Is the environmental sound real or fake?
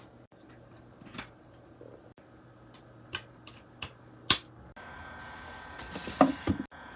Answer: real